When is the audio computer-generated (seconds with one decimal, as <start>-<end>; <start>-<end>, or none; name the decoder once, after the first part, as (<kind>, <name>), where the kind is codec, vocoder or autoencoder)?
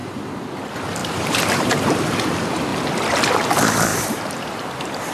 0.0-0.5 (vocoder, BigVGAN v2); 1.0-2.0; 3.9-5.1